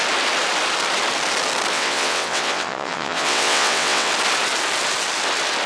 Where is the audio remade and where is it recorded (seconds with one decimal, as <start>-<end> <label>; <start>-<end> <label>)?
0.0-1.7 recorded; 1.7-4.1 remade; 4.1-5.7 recorded